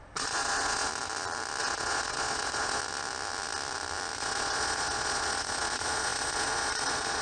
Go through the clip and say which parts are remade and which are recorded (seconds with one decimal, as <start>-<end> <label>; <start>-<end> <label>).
0.0-0.9 remade; 0.9-1.6 recorded; 1.6-2.8 remade; 2.8-4.2 recorded; 4.2-7.2 remade